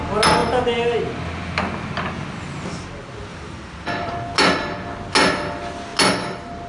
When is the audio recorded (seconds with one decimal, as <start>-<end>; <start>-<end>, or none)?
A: 0.0-3.3; 4.1-6.7